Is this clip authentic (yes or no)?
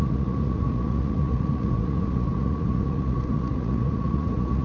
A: no